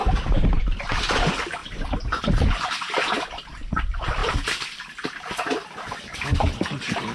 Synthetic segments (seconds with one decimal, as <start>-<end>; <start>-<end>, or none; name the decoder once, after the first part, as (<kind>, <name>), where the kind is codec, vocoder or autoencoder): 1.6-2.7 (vocoder, BigVGAN v2)

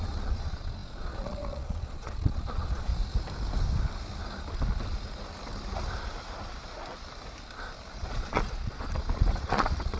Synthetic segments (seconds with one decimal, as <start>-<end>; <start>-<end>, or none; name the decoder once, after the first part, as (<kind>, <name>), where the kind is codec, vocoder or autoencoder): 0.0-2.9 (vocoder, Vocos); 7.9-10.0